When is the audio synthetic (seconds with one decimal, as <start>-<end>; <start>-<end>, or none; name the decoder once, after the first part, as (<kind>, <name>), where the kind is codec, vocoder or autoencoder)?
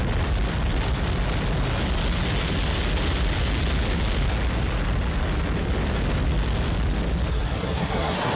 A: 7.3-8.3 (codec, SNAC)